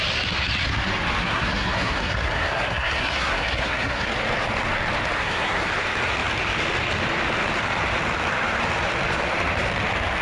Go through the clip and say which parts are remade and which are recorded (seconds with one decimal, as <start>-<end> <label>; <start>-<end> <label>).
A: 0.0-1.2 recorded; 1.2-4.1 remade; 4.1-5.2 recorded; 5.2-5.7 remade; 5.7-10.2 recorded

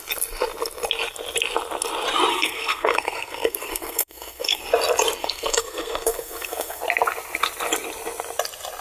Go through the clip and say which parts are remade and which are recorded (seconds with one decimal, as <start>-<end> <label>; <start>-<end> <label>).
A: 0.0-2.3 recorded; 2.3-4.6 remade; 4.6-5.2 recorded; 5.2-6.8 remade; 6.8-8.8 recorded

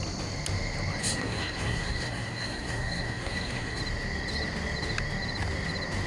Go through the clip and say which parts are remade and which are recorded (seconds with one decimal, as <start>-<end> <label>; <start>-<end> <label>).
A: 0.0-1.0 recorded; 1.0-3.8 remade; 3.8-6.1 recorded

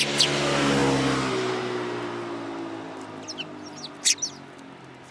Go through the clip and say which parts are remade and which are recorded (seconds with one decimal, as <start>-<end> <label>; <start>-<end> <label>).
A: 0.0-5.1 recorded

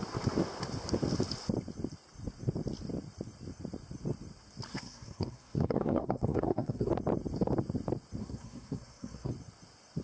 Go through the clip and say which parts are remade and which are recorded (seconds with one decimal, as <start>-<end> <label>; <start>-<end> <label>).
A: 0.0-4.7 recorded; 4.7-6.9 remade; 6.9-8.2 recorded; 8.2-9.3 remade; 9.3-10.0 recorded

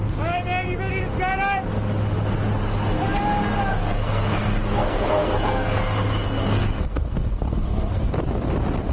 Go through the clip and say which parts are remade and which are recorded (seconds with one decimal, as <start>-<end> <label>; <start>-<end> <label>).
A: 0.0-3.7 recorded; 3.7-8.1 remade; 8.1-8.9 recorded

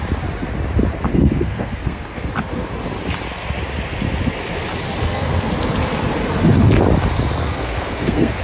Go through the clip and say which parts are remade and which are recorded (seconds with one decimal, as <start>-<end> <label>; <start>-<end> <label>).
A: 0.0-1.1 recorded; 1.1-2.3 remade; 2.3-5.0 recorded; 5.0-5.5 remade; 5.5-7.4 recorded; 7.4-8.4 remade